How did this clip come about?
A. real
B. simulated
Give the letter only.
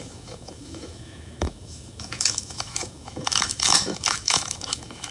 B